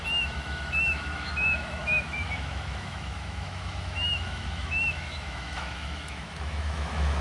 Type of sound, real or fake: fake